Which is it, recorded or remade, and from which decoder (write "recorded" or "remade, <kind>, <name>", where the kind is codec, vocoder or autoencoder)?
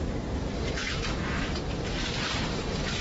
remade, vocoder, BigVGAN v2